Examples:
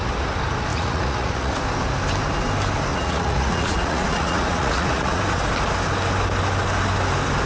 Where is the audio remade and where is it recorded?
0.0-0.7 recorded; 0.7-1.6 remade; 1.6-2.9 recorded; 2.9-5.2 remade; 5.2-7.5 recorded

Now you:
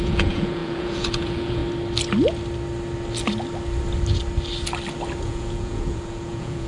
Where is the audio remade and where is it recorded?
0.0-1.6 remade; 1.6-5.2 recorded; 5.2-6.7 remade

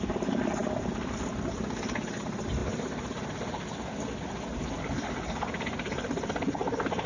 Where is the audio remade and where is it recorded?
0.0-7.1 recorded

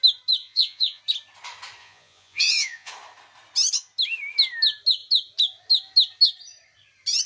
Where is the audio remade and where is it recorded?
0.0-0.4 recorded; 0.4-1.0 remade; 1.0-1.8 recorded; 1.8-2.9 remade; 2.9-7.3 recorded